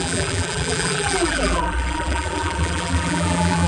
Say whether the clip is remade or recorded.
remade